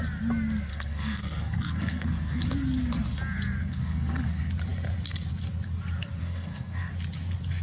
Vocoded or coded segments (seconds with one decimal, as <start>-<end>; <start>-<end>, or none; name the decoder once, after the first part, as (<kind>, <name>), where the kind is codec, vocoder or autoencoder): 0.7-2.4 (codec, SNAC); 3.6-4.2; 6.2-6.9

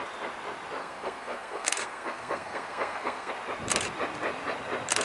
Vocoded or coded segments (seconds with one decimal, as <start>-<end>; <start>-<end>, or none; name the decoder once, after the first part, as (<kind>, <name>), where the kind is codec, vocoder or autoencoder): 0.8-3.3 (codec, SNAC)

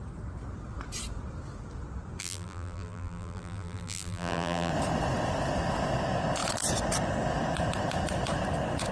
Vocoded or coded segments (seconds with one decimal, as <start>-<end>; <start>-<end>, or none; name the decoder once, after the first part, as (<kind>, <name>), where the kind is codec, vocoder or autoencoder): 2.2-4.7 (vocoder, BigVGAN v2)

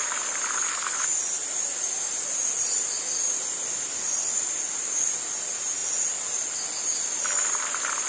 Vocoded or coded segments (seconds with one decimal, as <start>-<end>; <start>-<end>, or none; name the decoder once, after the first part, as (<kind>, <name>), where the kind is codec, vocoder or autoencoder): none